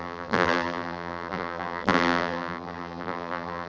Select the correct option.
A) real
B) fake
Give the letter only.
B